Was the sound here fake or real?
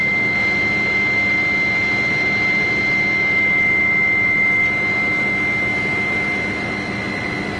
real